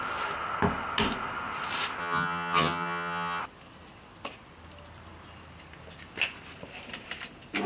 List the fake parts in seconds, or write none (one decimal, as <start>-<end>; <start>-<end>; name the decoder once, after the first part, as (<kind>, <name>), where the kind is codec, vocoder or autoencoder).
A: 2.0-3.4 (vocoder, HiFi-GAN)